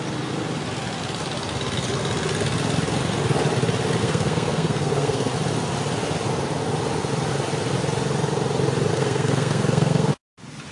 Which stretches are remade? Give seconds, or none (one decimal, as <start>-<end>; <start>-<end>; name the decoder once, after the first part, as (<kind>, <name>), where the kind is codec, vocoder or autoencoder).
4.0-5.3 (codec, SNAC); 8.9-10.1